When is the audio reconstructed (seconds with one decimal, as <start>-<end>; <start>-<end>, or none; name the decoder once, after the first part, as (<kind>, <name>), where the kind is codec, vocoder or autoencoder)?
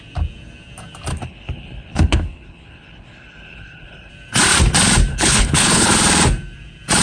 1.1-4.1 (codec, HILCodec); 5.1-5.9